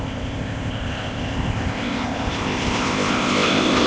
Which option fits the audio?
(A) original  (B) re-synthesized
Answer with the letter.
B